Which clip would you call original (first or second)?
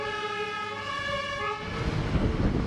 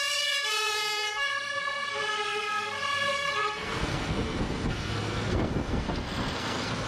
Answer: first